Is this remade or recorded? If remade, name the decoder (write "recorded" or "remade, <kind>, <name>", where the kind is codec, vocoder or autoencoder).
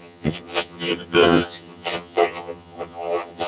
remade, vocoder, HiFi-GAN